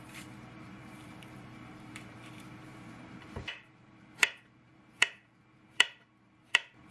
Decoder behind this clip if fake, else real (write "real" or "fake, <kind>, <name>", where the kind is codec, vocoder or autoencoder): fake, vocoder, BigVGAN v2